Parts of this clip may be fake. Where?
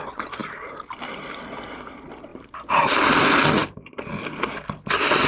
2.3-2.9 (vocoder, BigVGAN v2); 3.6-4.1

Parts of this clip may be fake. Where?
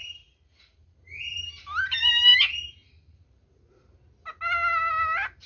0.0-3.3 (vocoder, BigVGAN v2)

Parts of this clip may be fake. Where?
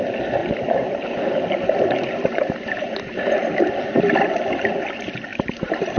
0.4-4.0 (vocoder, BigVGAN v2); 5.3-6.0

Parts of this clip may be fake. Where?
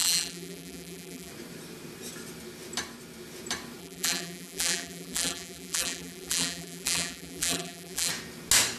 0.0-1.3 (vocoder, BigVGAN v2); 3.8-8.1